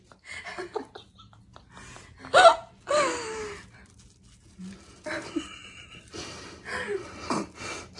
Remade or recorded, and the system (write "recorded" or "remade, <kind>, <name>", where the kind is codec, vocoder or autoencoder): recorded